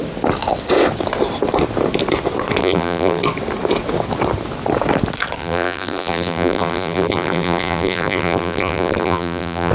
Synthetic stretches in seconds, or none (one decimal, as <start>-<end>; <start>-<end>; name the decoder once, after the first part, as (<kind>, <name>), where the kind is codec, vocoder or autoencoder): 2.6-3.2 (vocoder, BigVGAN v2); 5.4-9.7